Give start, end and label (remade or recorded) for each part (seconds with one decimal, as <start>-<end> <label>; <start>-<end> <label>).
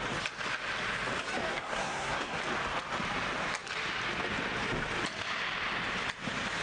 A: 0.0-1.5 recorded; 1.5-2.4 remade; 2.4-6.6 recorded